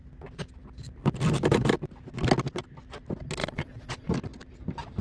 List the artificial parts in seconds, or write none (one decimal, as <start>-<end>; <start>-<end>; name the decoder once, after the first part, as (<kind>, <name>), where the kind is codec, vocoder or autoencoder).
3.4-4.1 (vocoder, Vocos)